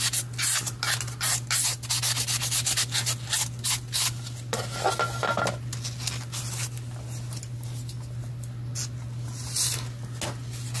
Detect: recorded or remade recorded